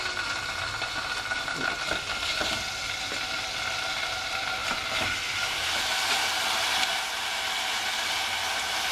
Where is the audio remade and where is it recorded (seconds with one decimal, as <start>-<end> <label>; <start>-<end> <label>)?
0.0-8.9 recorded